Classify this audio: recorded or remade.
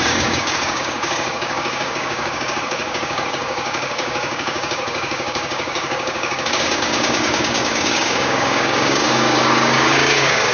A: remade